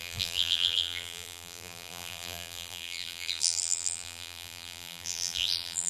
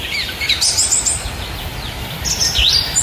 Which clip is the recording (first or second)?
second